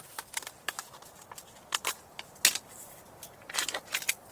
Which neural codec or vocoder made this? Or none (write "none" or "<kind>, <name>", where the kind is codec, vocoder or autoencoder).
vocoder, BigVGAN v2